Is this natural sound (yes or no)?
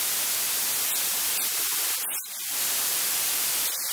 no